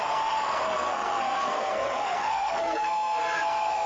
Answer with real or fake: fake